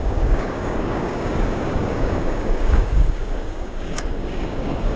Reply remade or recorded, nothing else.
remade